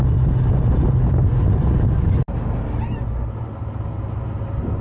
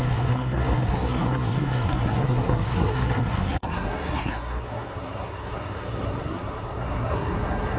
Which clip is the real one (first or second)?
first